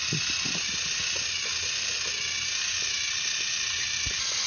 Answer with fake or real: real